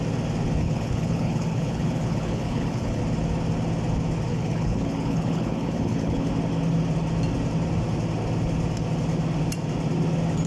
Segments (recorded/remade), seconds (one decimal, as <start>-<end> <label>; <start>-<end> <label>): 0.0-0.6 recorded; 0.6-3.0 remade; 3.0-4.3 recorded; 4.3-6.3 remade; 6.3-10.5 recorded